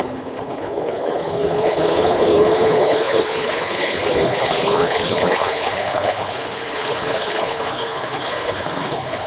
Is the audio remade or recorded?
remade